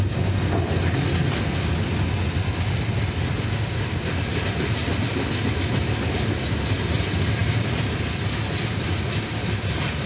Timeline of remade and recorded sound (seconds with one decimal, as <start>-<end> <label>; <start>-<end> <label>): 0.0-10.1 recorded

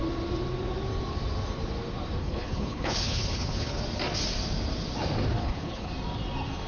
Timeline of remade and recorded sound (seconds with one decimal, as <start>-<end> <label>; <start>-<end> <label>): 0.0-2.2 recorded; 2.2-3.8 remade; 3.8-5.4 recorded; 5.4-5.9 remade; 5.9-6.7 recorded

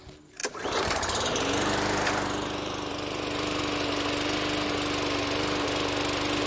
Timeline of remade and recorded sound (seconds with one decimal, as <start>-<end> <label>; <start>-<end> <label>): 0.0-0.4 recorded; 0.4-3.6 remade; 3.6-6.5 recorded